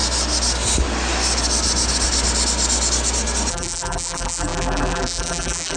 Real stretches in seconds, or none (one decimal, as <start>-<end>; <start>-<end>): 0.0-3.5